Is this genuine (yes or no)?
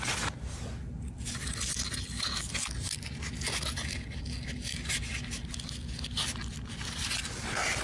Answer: yes